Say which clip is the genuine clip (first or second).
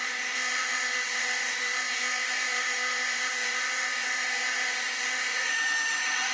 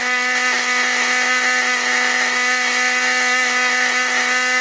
second